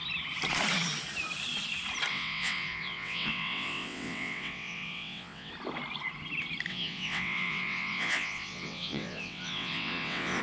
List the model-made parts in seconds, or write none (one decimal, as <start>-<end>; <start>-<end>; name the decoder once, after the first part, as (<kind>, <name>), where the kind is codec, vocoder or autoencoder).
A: 2.1-5.5 (vocoder, WaveNeXt); 6.7-10.4